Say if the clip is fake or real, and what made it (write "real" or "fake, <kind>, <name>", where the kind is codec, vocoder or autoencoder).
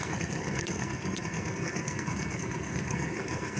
fake, codec, SNAC